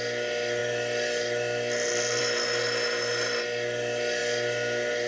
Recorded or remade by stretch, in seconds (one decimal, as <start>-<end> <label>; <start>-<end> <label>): 0.0-5.1 recorded